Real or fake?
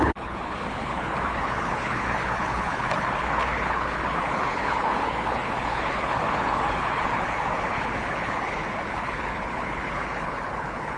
fake